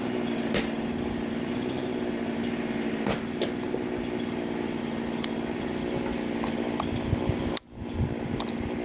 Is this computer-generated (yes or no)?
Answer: no